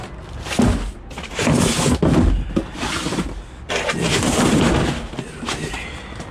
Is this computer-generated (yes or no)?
no